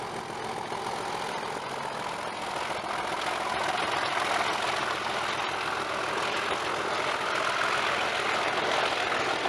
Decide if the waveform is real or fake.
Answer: real